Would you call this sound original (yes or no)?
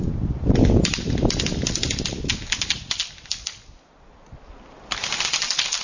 yes